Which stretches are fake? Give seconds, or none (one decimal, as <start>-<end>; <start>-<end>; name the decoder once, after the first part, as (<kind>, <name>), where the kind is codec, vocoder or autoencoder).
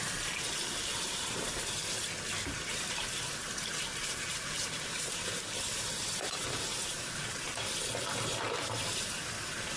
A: 0.9-2.0 (vocoder, BigVGAN v2); 4.3-7.6